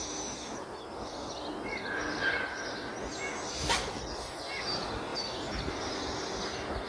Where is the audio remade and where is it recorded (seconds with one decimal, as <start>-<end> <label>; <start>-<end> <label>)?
0.0-6.9 recorded